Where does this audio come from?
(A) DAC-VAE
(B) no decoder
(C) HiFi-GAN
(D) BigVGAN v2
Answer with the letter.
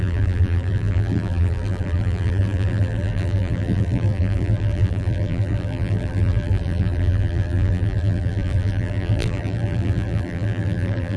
D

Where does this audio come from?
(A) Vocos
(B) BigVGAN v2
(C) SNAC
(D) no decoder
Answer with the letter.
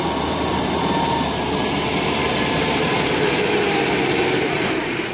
B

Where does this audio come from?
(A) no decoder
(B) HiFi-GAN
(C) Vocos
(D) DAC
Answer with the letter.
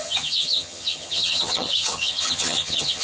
B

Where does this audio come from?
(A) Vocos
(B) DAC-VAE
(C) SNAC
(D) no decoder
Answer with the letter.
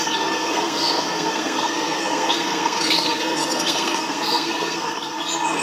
C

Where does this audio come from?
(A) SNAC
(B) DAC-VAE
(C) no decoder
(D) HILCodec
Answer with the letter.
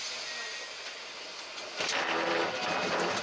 C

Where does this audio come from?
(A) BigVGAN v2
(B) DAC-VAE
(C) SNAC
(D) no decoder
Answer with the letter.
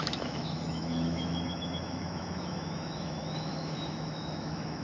B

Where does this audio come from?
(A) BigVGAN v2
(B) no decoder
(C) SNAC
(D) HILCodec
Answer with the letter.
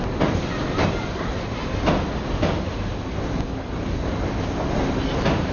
B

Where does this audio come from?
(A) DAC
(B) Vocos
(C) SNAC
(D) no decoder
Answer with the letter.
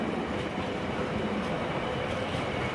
D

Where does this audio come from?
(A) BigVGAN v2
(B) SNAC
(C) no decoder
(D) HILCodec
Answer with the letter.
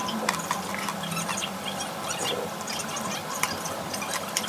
C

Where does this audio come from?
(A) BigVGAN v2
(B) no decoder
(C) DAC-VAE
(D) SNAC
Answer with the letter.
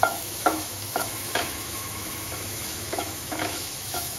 C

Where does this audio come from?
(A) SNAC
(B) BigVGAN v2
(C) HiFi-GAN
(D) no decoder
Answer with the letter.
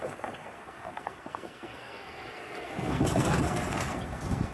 A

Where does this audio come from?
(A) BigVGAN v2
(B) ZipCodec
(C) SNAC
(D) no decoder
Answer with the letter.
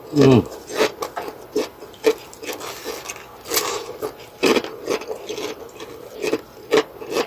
D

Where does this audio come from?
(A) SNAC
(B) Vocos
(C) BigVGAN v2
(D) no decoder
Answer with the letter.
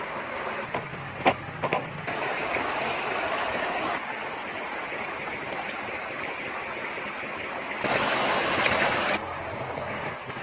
D